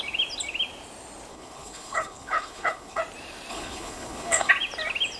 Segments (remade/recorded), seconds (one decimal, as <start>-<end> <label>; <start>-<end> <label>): 0.0-1.3 recorded; 1.3-3.0 remade; 3.0-3.5 recorded; 3.5-4.5 remade; 4.5-5.2 recorded